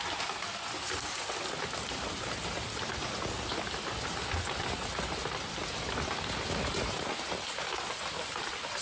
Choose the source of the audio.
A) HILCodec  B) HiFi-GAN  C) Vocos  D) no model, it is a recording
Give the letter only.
D